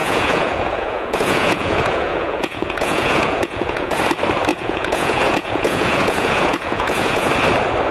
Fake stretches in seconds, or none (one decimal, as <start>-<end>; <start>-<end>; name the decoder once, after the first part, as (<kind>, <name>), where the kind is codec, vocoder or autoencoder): 0.0-4.0 (vocoder, Vocos); 4.5-7.3